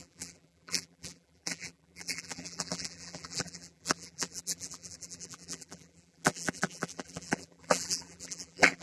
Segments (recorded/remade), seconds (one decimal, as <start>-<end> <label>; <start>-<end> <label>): 0.0-8.8 remade